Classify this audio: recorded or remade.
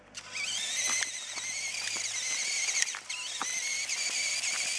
recorded